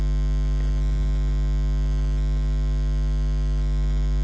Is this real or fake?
real